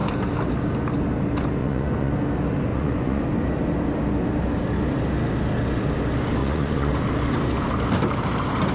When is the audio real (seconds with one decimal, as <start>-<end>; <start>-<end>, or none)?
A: 0.0-1.6; 2.1-2.7; 3.2-6.4; 6.9-8.7